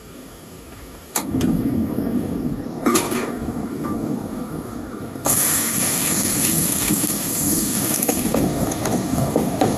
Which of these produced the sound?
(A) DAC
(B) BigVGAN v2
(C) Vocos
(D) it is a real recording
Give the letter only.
A